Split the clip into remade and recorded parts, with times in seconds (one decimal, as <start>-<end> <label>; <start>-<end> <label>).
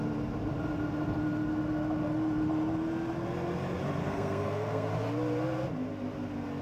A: 0.0-4.0 recorded; 4.0-4.9 remade; 4.9-6.6 recorded